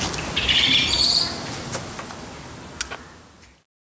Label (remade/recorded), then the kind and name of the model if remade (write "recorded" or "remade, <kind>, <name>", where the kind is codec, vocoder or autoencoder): recorded